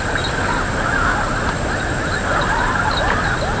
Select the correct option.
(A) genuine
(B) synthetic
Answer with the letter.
A